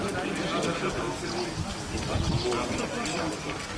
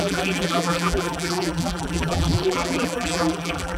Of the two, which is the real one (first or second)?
first